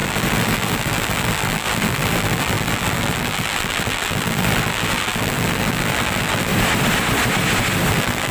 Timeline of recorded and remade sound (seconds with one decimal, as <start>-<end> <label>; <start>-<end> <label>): 0.0-6.5 remade; 6.5-7.9 recorded; 7.9-8.3 remade